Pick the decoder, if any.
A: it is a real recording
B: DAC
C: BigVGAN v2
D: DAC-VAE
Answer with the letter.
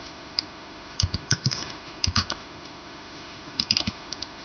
D